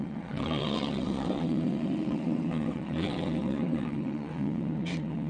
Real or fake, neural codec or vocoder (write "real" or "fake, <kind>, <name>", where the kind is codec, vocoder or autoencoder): fake, vocoder, WaveNeXt